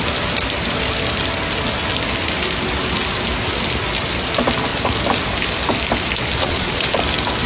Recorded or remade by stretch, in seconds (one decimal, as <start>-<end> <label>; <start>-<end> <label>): 0.0-6.4 recorded; 6.4-7.0 remade; 7.0-7.5 recorded